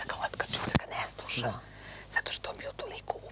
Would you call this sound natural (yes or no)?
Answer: yes